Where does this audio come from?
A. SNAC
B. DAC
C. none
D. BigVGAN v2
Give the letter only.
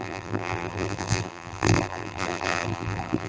D